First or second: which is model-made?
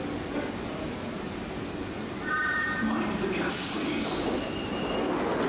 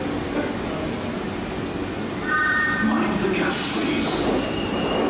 first